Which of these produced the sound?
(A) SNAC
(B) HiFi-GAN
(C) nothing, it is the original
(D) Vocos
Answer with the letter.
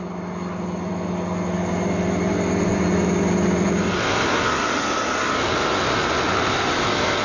C